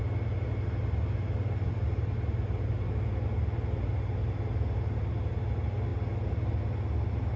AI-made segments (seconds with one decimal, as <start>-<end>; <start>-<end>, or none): none